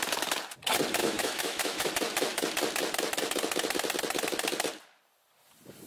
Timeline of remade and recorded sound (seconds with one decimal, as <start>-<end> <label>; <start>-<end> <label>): 0.0-1.0 recorded; 1.0-1.9 remade; 1.9-5.9 recorded